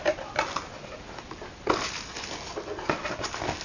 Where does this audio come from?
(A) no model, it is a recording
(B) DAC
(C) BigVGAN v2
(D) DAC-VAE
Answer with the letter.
A